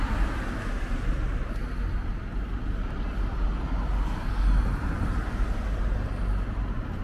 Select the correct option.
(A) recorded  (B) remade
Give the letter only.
A